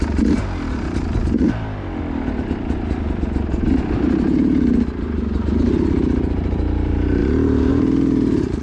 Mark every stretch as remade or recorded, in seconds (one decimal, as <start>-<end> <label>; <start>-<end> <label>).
0.0-8.6 recorded